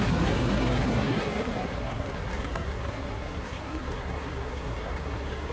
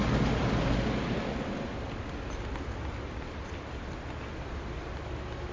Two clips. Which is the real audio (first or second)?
second